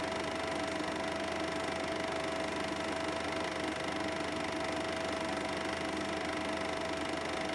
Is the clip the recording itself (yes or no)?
yes